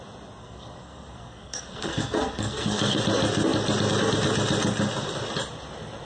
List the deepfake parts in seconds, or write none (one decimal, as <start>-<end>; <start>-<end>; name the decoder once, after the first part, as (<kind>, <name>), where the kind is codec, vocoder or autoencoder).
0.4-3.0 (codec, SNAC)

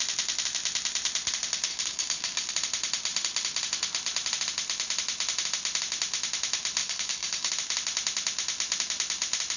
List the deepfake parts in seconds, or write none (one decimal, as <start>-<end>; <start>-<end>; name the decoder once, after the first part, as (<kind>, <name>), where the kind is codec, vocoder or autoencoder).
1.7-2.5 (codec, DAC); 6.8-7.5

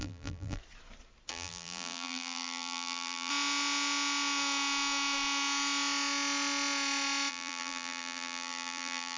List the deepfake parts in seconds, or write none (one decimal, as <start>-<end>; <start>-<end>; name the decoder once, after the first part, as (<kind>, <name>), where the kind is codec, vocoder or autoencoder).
0.0-0.6 (vocoder, BigVGAN v2); 1.3-3.3; 7.3-9.2

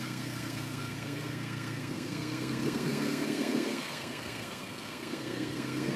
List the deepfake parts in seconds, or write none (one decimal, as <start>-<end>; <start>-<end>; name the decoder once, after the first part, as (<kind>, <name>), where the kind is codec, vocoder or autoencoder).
0.0-6.0 (codec, SNAC)

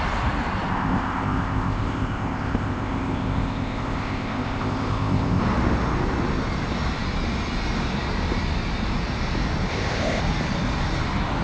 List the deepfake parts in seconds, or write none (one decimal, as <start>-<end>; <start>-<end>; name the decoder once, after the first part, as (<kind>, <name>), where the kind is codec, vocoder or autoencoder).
0.7-5.4 (codec, ZipCodec); 9.7-10.2

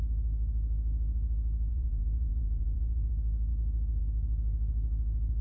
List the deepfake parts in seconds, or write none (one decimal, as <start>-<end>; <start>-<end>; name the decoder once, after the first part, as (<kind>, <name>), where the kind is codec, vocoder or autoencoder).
1.7-3.1 (vocoder, Vocos)

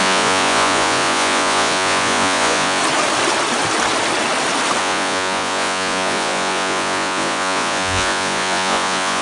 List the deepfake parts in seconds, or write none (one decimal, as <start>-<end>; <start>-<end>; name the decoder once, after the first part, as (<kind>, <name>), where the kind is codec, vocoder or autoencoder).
0.0-2.8 (vocoder, Vocos); 4.8-9.2

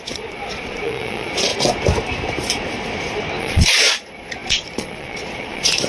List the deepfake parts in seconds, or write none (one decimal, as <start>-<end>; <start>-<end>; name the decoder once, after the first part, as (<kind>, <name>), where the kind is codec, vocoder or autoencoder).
0.0-1.5 (vocoder, Vocos); 3.4-5.9